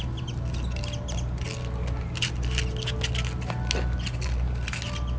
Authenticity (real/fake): real